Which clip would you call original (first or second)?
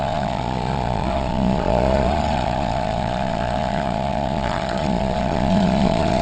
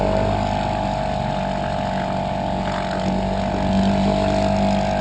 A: second